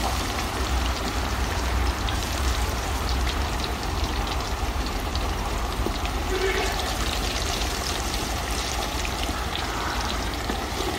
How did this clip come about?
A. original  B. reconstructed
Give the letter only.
B